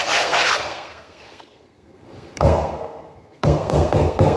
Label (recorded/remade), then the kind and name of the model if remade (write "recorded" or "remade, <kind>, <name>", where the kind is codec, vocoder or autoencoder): remade, codec, SNAC